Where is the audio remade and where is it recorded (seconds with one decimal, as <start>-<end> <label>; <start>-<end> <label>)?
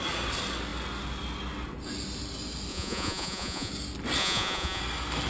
0.0-2.7 recorded; 2.7-3.7 remade; 3.7-4.2 recorded; 4.2-4.8 remade; 4.8-5.3 recorded